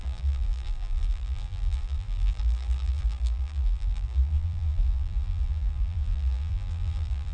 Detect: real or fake fake